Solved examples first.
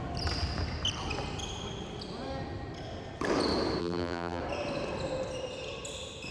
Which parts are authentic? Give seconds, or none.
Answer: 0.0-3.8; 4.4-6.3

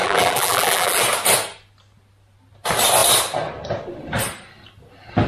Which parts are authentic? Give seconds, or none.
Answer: 1.0-5.3

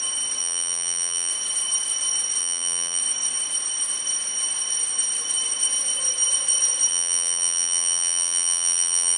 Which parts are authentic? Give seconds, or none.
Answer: 0.0-0.4; 1.3-2.4; 3.0-6.9

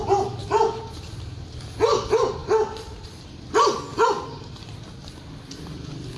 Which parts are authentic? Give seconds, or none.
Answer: 0.0-6.2

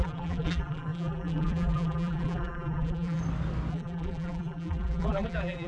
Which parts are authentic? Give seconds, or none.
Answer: 3.2-3.7

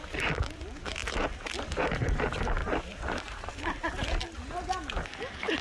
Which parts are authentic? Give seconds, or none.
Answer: 0.0-2.6; 3.5-5.6

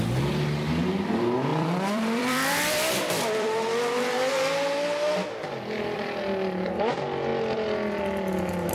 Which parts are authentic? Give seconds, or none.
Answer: 0.0-1.5; 4.3-8.7